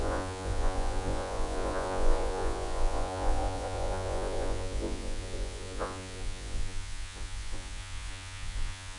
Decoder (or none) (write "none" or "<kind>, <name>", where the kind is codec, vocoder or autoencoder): vocoder, Vocos